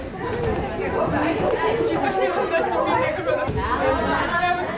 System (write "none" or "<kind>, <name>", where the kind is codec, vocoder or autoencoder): none